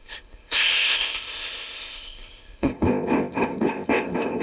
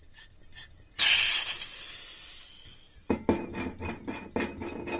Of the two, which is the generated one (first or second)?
first